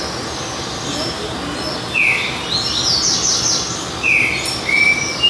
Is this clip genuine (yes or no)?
yes